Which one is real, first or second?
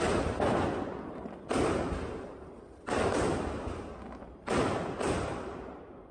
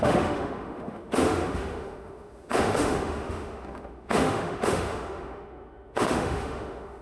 first